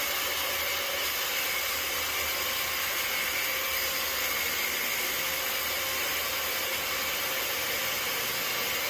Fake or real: real